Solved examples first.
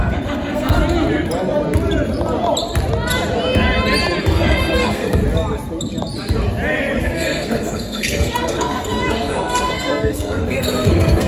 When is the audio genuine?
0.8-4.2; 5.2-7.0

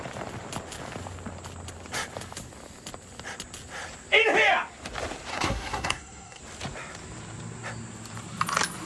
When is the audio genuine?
0.0-5.3; 6.4-8.9

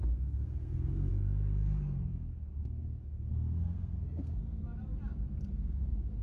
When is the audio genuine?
2.8-3.3; 4.6-5.5

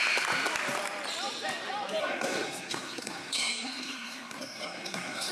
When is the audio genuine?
0.0-2.0

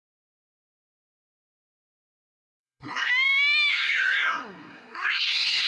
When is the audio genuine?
0.0-0.9; 3.1-3.7

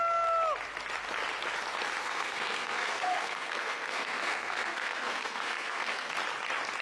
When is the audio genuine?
0.0-2.0; 6.1-6.8

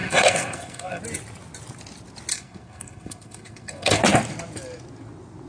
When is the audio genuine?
1.0-2.3; 4.0-5.5